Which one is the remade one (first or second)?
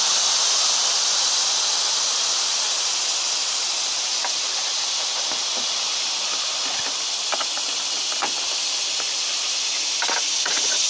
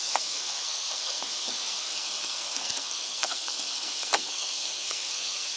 second